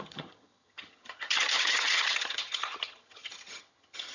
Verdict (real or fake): fake